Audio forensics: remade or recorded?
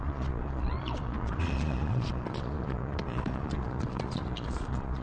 remade